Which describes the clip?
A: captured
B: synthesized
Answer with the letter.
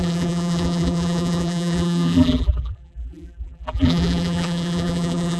B